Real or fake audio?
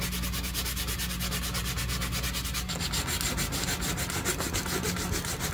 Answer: real